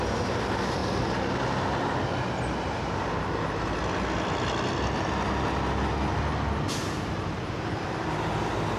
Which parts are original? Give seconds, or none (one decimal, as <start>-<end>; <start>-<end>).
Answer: 0.0-6.8; 8.0-8.8